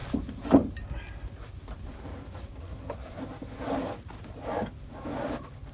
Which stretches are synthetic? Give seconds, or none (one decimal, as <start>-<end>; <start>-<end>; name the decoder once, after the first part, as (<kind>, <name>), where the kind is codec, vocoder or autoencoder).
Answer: 2.6-3.2 (codec, SNAC)